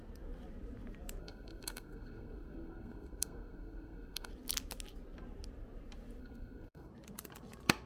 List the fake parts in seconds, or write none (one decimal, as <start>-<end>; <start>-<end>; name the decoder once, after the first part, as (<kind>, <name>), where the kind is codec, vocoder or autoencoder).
1.2-4.3 (codec, SNAC); 6.2-6.9